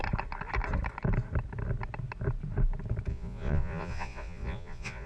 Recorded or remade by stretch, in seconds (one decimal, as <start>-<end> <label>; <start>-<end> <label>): 0.0-3.1 recorded; 3.1-5.1 remade